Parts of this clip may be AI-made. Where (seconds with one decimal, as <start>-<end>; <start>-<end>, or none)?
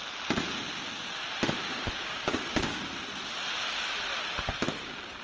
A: 1.7-2.8